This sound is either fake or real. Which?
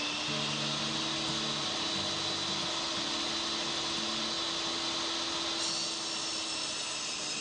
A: real